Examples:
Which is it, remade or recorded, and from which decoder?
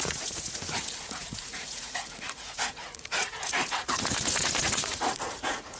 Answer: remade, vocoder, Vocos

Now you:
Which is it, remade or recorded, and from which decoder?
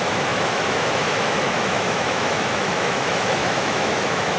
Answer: remade, autoencoder, DAC-VAE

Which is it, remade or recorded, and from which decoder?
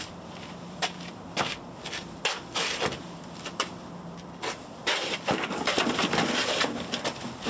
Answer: remade, vocoder, BigVGAN v2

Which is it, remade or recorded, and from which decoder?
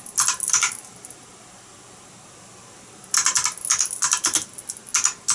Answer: recorded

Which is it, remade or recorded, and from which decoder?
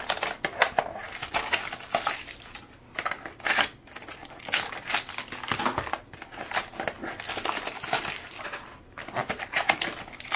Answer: remade, vocoder, BigVGAN v2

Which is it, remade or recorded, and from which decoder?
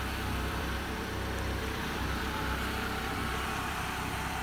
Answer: remade, vocoder, BigVGAN v2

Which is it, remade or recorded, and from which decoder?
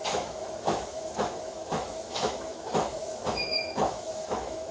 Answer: remade, autoencoder, DAC-VAE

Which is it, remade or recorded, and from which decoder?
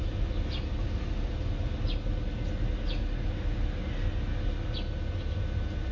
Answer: recorded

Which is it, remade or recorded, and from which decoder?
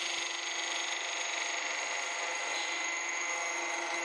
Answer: recorded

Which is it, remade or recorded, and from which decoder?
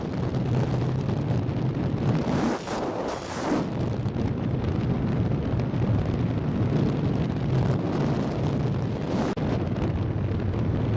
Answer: recorded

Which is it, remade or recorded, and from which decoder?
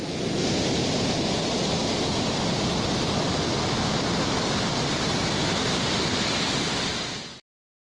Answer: recorded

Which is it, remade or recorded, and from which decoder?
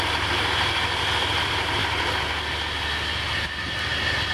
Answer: recorded